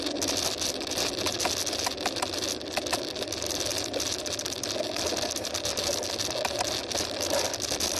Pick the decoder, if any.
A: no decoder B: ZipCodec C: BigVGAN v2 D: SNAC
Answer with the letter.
A